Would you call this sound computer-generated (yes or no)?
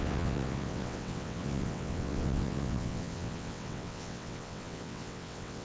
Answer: yes